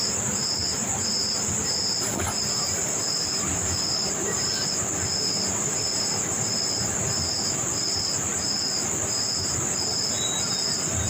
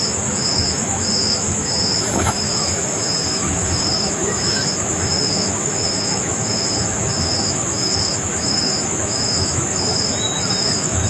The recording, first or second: first